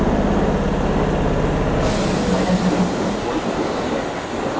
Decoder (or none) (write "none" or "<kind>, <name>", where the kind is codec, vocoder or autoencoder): none